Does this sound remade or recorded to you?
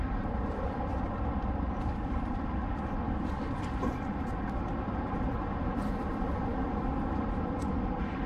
remade